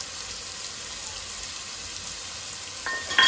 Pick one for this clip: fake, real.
real